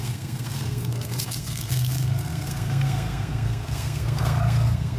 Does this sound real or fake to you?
fake